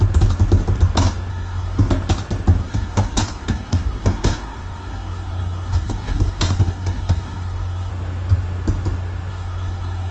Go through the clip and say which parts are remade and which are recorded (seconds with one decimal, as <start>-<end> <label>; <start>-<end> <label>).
0.0-1.3 recorded; 1.3-1.8 remade; 1.8-2.6 recorded; 2.6-7.9 remade; 7.9-9.3 recorded; 9.3-10.1 remade